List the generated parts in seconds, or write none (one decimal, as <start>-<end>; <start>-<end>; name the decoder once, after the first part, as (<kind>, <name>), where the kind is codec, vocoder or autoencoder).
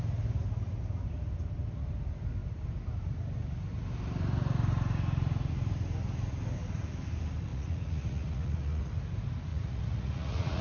7.5-8.9 (vocoder, Vocos); 9.5-10.6